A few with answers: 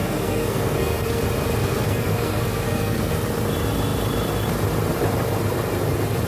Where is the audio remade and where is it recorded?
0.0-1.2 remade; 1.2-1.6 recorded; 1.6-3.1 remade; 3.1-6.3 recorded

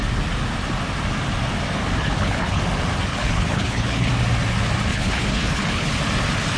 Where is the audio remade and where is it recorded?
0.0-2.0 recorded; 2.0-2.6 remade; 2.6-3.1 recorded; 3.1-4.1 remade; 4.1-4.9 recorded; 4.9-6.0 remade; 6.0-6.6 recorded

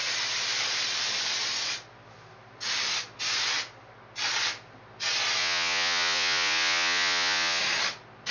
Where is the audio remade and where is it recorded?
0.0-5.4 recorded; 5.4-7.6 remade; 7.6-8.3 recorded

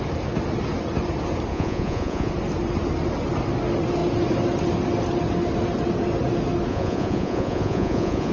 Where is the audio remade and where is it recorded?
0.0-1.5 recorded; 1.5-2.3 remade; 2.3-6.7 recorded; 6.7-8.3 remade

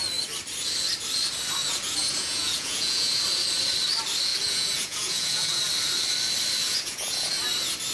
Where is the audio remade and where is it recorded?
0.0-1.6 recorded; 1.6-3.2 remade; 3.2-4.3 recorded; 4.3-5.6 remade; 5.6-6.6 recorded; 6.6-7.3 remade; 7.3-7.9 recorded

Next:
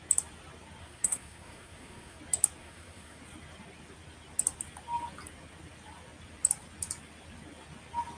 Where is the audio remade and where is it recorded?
0.0-0.8 recorded; 0.8-2.2 remade; 2.2-2.6 recorded; 2.6-3.2 remade; 3.2-8.2 recorded

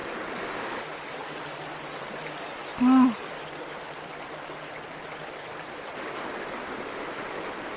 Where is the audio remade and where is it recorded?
0.0-7.8 recorded

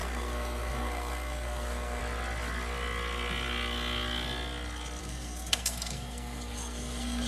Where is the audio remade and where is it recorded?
0.0-2.0 remade; 2.0-5.0 recorded; 5.0-7.3 remade